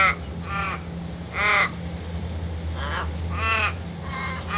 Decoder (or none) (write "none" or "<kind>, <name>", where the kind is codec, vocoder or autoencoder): none